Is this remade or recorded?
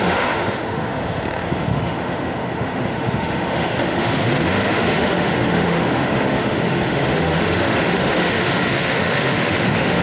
remade